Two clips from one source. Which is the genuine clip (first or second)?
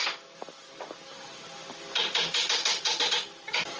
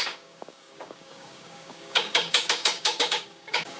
first